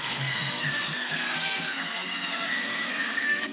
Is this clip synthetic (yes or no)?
yes